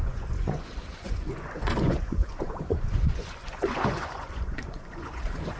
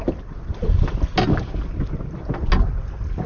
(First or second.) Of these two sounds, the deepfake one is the first